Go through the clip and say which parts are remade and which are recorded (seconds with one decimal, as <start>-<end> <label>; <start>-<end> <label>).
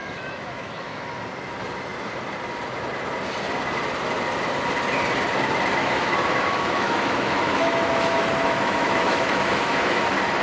0.0-1.1 remade; 1.1-5.8 recorded; 5.8-10.0 remade; 10.0-10.4 recorded